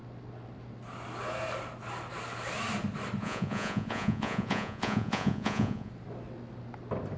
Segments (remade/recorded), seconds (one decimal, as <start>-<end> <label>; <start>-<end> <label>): 0.0-3.2 recorded; 3.2-5.9 remade; 5.9-7.2 recorded